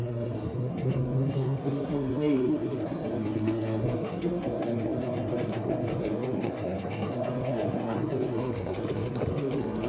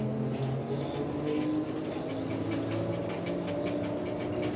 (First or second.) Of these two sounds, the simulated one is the first